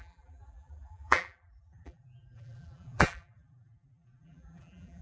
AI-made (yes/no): yes